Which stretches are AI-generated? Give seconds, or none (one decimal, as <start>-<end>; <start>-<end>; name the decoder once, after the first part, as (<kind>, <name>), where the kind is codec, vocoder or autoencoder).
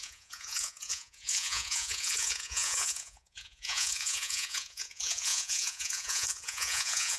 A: 0.0-7.2 (vocoder, Vocos)